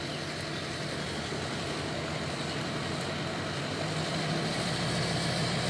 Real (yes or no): yes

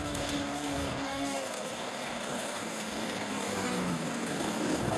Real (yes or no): no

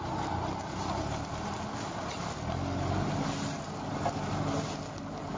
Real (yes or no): yes